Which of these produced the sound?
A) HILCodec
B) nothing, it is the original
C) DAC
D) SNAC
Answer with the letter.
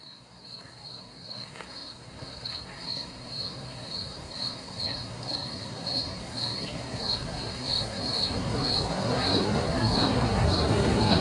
D